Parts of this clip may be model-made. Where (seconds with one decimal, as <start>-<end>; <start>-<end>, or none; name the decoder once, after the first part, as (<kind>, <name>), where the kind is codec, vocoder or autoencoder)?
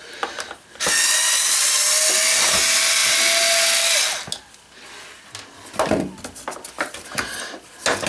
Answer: none